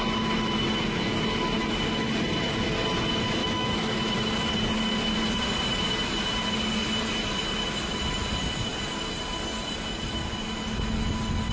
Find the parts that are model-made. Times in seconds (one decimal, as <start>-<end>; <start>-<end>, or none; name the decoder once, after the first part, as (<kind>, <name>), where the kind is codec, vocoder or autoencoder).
3.4-3.9 (autoencoder, DAC-VAE)